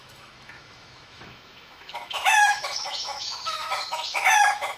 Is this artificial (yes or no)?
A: yes